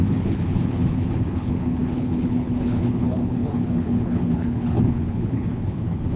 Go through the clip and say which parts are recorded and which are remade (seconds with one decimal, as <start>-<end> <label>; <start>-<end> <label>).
0.0-6.2 remade

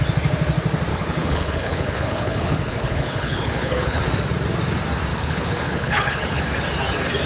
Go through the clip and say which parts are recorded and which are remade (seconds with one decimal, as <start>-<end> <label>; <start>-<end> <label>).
0.0-0.9 recorded; 0.9-4.0 remade; 4.0-5.1 recorded; 5.1-6.4 remade; 6.4-7.3 recorded